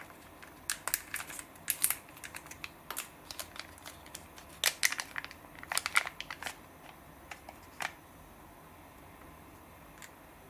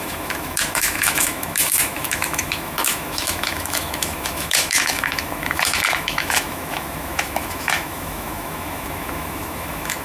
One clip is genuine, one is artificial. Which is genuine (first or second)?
first